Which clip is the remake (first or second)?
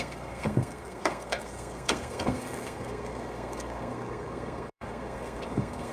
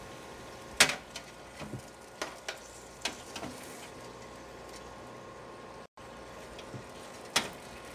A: first